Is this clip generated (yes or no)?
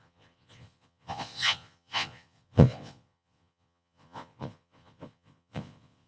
yes